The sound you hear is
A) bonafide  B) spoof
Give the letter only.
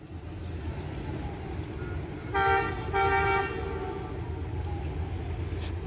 A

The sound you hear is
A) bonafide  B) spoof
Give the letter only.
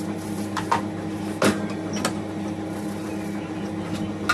A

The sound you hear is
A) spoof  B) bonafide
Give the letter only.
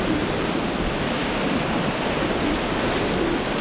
B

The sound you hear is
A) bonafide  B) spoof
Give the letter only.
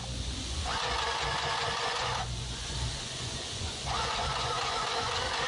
B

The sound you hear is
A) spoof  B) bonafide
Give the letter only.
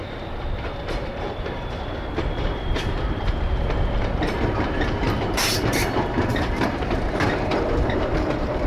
A